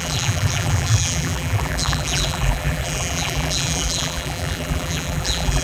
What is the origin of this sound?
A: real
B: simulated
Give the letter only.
B